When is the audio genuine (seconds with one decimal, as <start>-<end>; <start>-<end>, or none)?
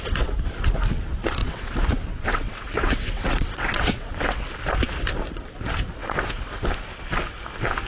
0.0-1.4; 4.4-6.0; 6.5-7.9